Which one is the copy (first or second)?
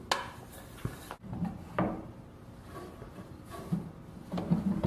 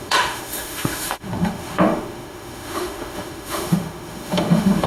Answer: second